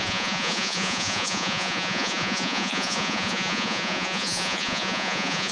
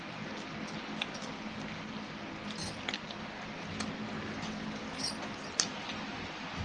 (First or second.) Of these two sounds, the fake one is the first